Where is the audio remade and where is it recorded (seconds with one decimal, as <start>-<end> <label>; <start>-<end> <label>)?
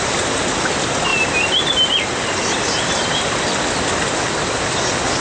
0.0-5.2 recorded